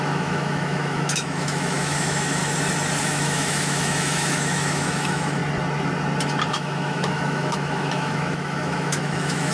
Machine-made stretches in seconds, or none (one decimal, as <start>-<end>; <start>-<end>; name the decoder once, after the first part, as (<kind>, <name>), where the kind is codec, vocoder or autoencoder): 0.0-2.4 (autoencoder, DAC-VAE); 3.0-5.4; 6.5-9.5